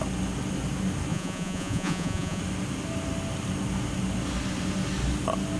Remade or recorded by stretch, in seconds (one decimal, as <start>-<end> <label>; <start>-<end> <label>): 0.0-1.1 recorded; 1.1-2.4 remade; 2.4-5.6 recorded